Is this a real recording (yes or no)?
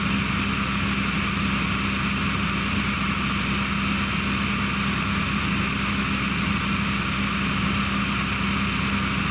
yes